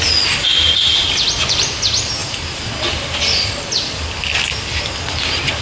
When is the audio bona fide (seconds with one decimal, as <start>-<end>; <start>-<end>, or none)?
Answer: 0.0-5.6